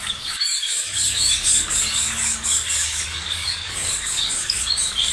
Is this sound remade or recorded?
remade